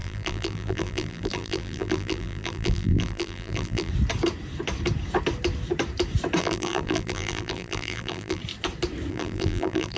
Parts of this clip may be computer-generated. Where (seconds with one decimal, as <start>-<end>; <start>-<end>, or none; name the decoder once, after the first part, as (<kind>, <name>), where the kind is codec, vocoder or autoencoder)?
0.0-3.9 (vocoder, BigVGAN v2); 6.4-8.4; 9.1-10.0